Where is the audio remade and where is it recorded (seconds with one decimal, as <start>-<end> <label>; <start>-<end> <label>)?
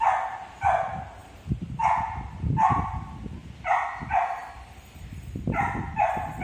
0.0-6.4 recorded